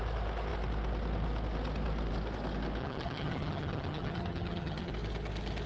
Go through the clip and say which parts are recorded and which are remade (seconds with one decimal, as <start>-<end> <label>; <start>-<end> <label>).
0.0-2.8 recorded; 2.8-4.9 remade; 4.9-5.7 recorded